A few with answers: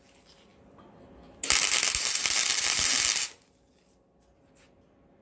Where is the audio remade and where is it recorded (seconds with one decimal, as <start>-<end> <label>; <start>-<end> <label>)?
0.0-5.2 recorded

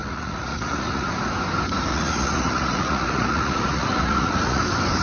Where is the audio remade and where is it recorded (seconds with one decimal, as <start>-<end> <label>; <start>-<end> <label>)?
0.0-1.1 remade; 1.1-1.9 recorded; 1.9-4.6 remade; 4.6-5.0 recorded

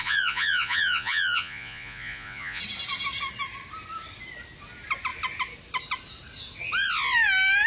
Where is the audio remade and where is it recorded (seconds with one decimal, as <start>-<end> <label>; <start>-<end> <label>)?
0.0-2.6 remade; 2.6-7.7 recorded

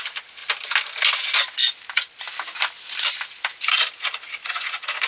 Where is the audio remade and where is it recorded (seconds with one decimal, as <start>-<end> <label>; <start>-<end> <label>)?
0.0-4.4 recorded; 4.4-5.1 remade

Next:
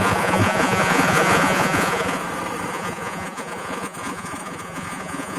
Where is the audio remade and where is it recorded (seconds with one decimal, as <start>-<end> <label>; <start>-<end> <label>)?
0.0-2.2 remade; 2.2-2.7 recorded; 2.7-5.4 remade

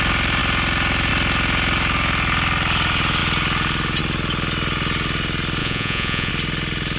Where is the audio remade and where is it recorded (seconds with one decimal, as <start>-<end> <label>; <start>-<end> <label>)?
0.0-5.6 recorded; 5.6-6.3 remade; 6.3-7.0 recorded